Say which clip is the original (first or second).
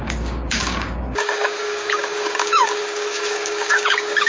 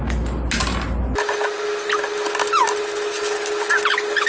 second